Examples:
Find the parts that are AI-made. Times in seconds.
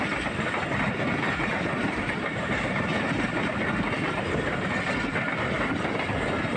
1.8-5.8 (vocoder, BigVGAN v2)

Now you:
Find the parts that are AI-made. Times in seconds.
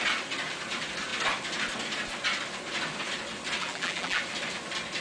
3.6-4.2 (vocoder, BigVGAN v2)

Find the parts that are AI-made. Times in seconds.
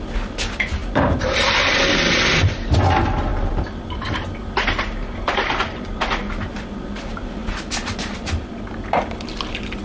0.8-2.8 (vocoder, BigVGAN v2); 3.3-4.2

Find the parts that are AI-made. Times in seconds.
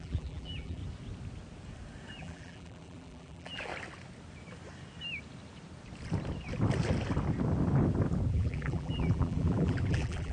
0.0-0.8 (vocoder, BigVGAN v2); 2.2-3.7; 8.3-10.3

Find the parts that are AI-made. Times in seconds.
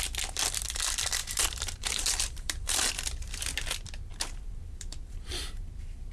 1.2-2.9 (vocoder, BigVGAN v2); 4.1-6.1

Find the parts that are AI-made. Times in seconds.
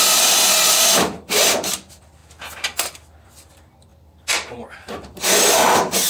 none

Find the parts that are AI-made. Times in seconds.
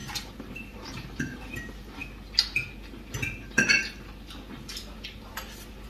0.0-1.4 (vocoder, BigVGAN v2)